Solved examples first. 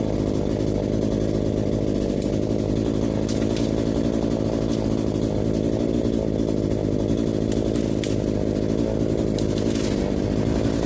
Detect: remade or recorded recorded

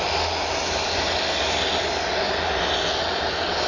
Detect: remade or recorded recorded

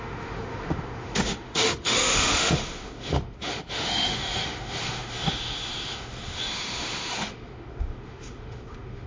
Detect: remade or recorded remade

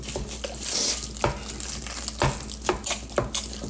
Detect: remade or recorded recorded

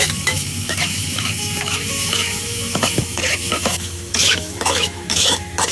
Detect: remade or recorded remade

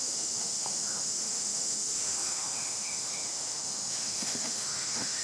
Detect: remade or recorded remade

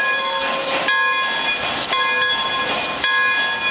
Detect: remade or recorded recorded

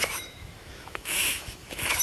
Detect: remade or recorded remade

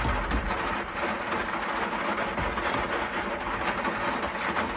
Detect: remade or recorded recorded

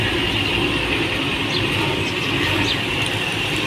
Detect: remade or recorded recorded